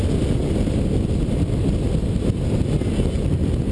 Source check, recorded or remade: recorded